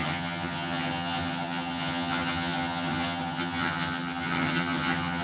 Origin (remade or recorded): remade